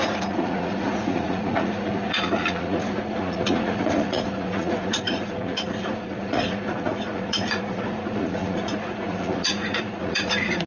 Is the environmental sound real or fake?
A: fake